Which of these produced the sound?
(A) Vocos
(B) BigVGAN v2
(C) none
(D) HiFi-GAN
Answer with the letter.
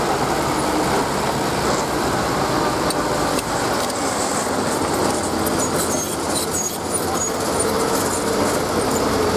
C